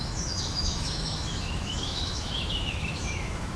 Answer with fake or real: fake